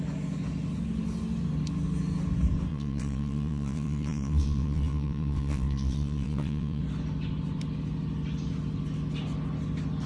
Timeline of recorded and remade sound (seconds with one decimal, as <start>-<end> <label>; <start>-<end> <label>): 0.0-2.7 recorded; 2.7-6.8 remade; 6.8-10.1 recorded